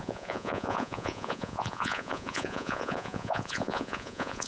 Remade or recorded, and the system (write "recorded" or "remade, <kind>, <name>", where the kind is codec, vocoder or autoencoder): remade, vocoder, Vocos